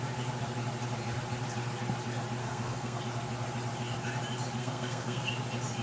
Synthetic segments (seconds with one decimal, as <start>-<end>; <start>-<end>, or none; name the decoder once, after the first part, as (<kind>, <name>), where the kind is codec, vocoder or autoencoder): 2.4-3.0 (codec, SNAC); 4.6-5.3

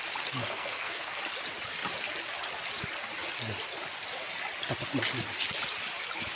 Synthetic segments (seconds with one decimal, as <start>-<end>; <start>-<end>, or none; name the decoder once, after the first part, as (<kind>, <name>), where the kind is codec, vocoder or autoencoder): 0.4-1.2 (codec, SNAC)

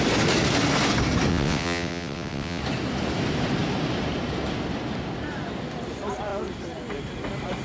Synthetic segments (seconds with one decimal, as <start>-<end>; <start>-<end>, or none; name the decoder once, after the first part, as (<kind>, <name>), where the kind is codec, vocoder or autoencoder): 1.3-2.6 (vocoder, WaveNeXt)